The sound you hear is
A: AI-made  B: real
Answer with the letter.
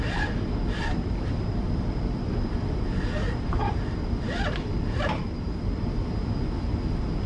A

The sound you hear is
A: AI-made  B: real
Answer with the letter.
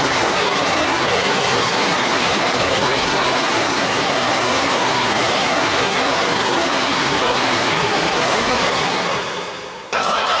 A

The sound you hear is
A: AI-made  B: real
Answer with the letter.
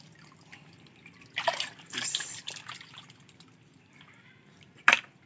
A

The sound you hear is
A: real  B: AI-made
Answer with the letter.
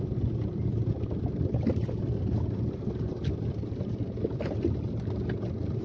A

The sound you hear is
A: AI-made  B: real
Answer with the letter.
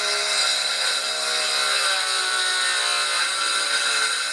B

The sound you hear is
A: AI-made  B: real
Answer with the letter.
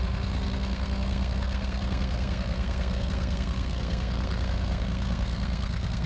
A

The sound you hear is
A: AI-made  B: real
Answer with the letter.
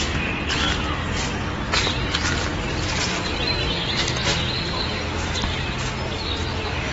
B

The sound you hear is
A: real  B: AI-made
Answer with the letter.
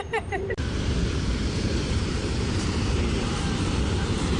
B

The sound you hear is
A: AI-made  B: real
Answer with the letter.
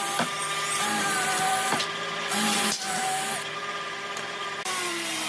A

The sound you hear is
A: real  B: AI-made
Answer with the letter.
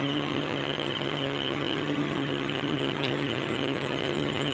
B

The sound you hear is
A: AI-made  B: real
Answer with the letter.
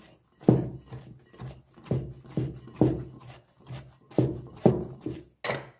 B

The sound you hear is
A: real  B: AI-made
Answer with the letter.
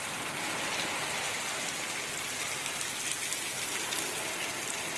A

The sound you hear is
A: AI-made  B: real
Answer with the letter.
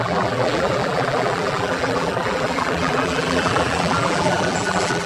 A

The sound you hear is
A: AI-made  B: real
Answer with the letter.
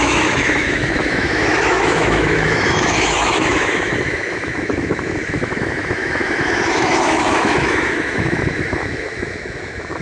A